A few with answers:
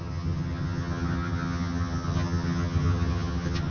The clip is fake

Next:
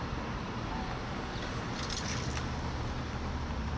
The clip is real